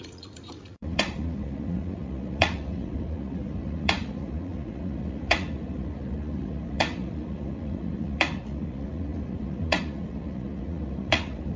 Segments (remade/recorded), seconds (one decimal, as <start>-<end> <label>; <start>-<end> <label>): 0.0-11.6 remade